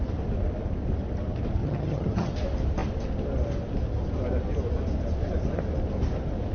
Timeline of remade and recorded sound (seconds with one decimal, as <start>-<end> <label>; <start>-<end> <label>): 0.0-1.6 recorded; 1.6-2.3 remade; 2.3-6.5 recorded